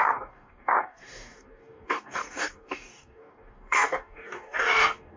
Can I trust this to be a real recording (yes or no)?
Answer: no